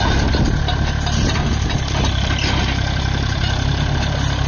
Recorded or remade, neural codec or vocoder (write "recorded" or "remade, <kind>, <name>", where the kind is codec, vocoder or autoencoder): recorded